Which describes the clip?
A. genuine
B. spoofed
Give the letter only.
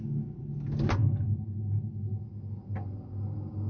A